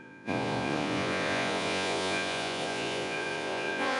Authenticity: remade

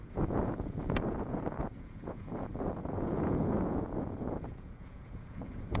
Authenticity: remade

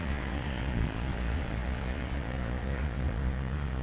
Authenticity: remade